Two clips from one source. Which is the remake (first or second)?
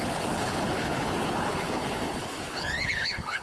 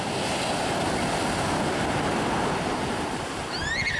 first